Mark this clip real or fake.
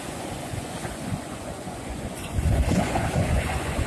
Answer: fake